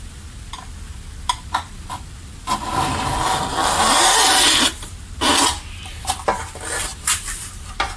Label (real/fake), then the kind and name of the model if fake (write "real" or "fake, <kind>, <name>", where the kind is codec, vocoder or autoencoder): real